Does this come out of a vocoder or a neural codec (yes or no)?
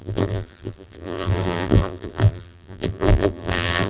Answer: yes